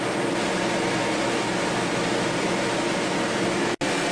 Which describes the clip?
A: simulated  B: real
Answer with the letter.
B